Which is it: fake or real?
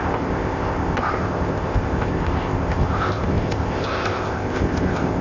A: fake